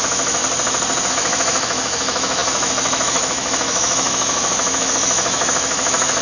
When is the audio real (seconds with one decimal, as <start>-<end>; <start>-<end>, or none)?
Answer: 0.4-1.1